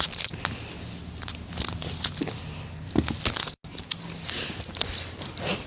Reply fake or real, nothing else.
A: real